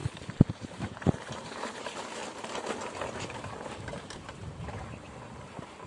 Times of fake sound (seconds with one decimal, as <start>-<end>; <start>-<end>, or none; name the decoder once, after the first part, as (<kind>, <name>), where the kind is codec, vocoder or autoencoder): 0.5-2.2 (vocoder, BigVGAN v2); 3.4-5.9